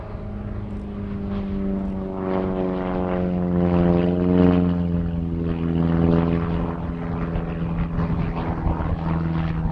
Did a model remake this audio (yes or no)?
no